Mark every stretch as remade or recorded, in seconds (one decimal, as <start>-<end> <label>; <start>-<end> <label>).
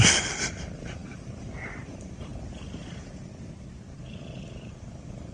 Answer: 0.0-2.3 remade; 2.3-2.8 recorded; 2.8-3.3 remade; 3.3-4.7 recorded; 4.7-5.3 remade